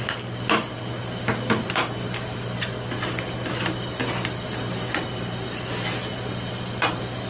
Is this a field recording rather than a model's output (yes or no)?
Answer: yes